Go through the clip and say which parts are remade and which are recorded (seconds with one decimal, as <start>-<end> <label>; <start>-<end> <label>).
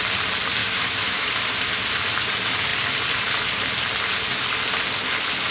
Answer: 0.0-0.6 recorded; 0.6-1.3 remade; 1.3-5.5 recorded